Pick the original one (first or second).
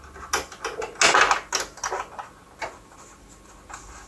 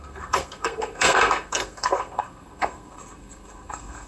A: first